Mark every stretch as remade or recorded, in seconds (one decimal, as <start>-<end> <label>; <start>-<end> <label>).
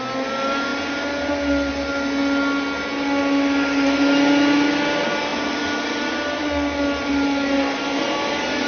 0.0-8.7 recorded